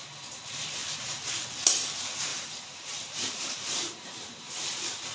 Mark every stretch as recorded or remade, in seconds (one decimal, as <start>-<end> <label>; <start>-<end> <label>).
0.0-2.3 recorded; 2.3-4.4 remade; 4.4-5.1 recorded